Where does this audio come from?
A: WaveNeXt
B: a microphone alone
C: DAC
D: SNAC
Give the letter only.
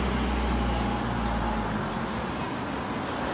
B